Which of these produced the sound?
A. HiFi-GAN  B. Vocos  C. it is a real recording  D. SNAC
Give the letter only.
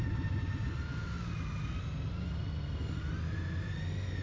C